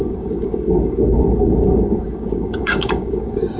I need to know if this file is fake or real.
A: fake